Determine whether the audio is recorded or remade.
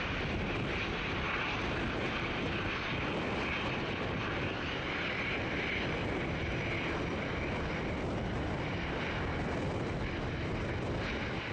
recorded